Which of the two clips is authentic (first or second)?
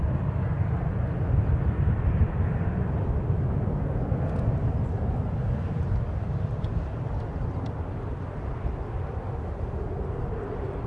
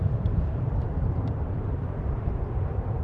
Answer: first